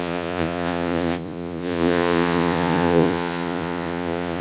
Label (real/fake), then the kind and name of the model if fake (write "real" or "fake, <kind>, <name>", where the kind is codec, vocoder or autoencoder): fake, vocoder, Vocos